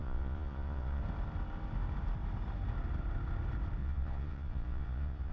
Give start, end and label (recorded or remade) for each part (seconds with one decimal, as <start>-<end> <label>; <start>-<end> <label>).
0.0-1.0 remade; 1.0-3.8 recorded; 3.8-5.3 remade